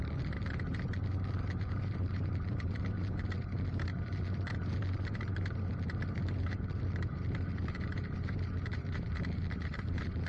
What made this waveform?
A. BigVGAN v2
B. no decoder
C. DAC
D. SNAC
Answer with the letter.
A